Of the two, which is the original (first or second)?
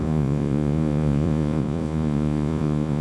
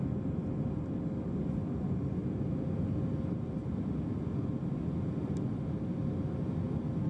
second